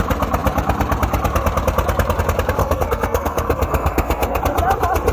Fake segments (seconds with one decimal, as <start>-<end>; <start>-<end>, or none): 2.6-4.4